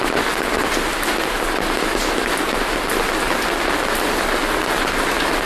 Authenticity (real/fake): real